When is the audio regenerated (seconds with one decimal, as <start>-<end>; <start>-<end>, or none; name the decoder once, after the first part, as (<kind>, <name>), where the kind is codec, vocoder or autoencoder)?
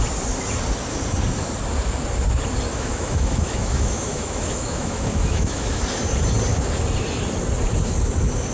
2.7-5.8 (autoencoder, DAC-VAE)